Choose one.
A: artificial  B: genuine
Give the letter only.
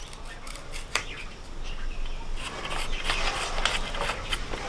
B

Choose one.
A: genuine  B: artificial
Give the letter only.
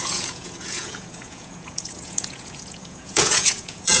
B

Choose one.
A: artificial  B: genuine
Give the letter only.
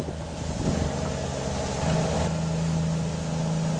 B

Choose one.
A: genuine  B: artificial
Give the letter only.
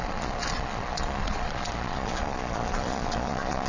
B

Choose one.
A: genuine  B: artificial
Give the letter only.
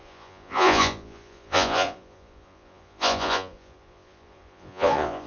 B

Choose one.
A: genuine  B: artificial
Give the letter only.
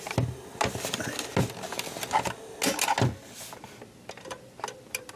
A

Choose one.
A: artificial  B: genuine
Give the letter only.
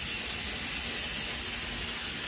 B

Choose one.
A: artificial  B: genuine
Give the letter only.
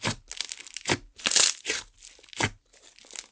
B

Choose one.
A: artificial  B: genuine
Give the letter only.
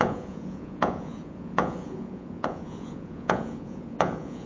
A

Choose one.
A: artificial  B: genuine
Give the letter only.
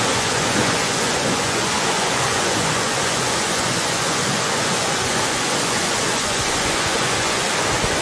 A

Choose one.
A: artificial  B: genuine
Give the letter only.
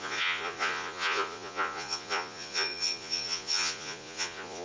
A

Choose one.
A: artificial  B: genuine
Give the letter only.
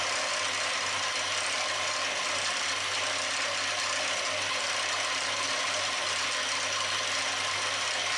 B